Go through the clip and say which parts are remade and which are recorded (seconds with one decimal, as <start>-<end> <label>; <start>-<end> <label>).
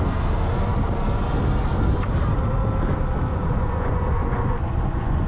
0.0-3.3 recorded; 3.3-5.3 remade